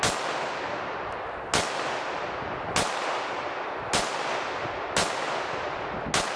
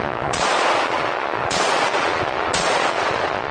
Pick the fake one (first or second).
second